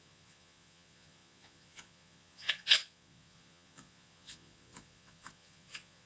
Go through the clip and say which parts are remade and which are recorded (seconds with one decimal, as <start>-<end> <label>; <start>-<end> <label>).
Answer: 0.0-6.1 remade